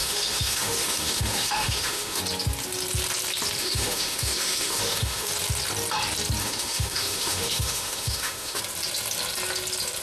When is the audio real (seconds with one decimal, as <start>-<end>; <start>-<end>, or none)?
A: 2.2-3.6; 5.3-6.4; 8.6-10.0